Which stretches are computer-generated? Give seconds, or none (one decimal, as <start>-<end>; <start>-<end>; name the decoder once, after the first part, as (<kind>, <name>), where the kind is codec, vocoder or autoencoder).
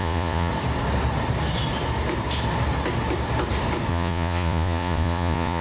0.0-0.5 (vocoder, Vocos); 3.9-5.6